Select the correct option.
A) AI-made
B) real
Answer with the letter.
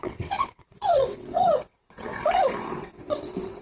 A